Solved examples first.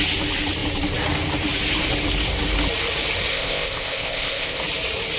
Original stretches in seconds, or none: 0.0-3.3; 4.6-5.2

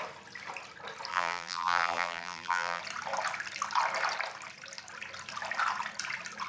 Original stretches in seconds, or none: 0.0-1.1; 2.8-6.5

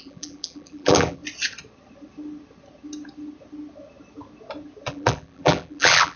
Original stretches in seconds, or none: 1.2-4.9

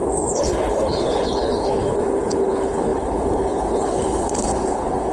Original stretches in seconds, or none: none

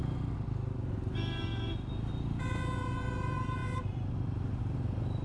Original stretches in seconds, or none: 0.0-5.2

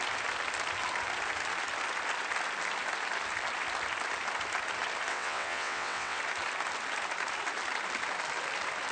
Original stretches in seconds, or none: 0.0-5.1; 6.2-8.9

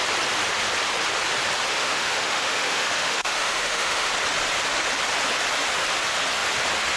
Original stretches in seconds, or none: 0.0-1.7; 4.1-7.0

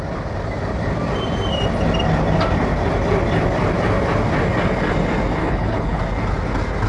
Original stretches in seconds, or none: 0.0-5.4; 6.0-6.9